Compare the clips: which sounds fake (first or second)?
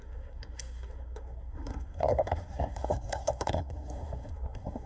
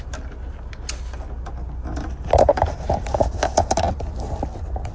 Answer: first